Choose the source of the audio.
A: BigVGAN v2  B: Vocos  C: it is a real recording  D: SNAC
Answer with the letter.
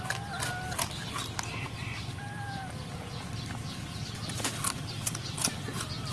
C